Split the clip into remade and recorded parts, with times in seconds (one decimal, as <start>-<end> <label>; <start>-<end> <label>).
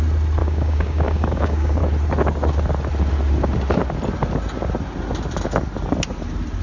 0.0-0.4 recorded; 0.4-1.8 remade; 1.8-6.6 recorded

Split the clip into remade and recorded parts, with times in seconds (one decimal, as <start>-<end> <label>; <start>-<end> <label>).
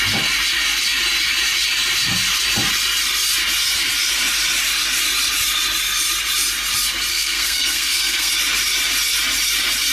0.0-7.1 recorded; 7.1-8.3 remade; 8.3-9.9 recorded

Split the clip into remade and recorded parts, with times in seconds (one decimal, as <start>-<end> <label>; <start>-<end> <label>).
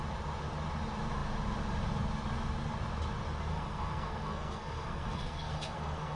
0.0-3.5 recorded; 3.5-6.2 remade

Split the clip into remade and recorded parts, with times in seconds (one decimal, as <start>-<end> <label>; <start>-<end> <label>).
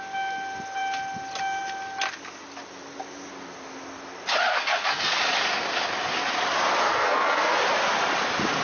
0.0-4.5 recorded; 4.5-5.2 remade; 5.2-6.8 recorded; 6.8-7.6 remade; 7.6-8.6 recorded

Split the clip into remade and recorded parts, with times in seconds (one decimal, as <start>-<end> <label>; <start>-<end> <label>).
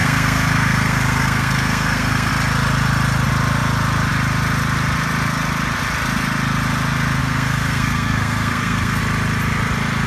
0.0-2.3 remade; 2.3-7.2 recorded; 7.2-9.0 remade; 9.0-10.1 recorded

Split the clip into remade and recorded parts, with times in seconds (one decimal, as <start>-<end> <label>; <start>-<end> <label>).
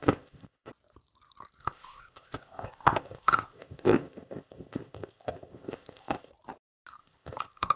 0.0-0.7 remade; 0.7-1.6 recorded; 1.6-6.3 remade; 6.3-7.0 recorded; 7.0-7.8 remade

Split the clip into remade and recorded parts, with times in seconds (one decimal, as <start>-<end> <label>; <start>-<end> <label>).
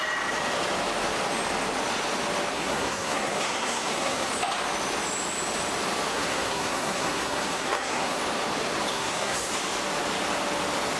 0.0-2.5 recorded; 2.5-4.3 remade; 4.3-6.1 recorded; 6.1-8.2 remade; 8.2-8.9 recorded; 8.9-9.5 remade; 9.5-11.0 recorded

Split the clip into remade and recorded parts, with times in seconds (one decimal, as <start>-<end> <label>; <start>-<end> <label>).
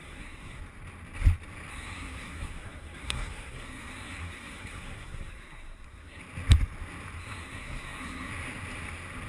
0.0-0.6 remade; 0.6-1.7 recorded; 1.7-6.2 remade; 6.2-7.2 recorded; 7.2-8.3 remade; 8.3-9.3 recorded